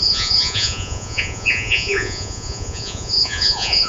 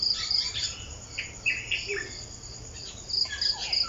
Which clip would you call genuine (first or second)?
second